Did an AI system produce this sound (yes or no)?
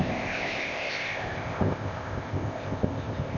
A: yes